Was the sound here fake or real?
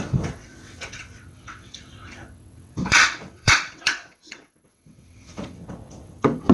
fake